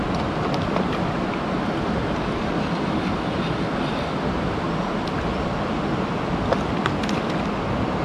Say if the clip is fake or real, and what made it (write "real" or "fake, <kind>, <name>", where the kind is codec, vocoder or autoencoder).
real